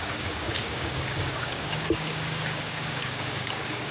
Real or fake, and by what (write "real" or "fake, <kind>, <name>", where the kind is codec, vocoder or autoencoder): fake, codec, DAC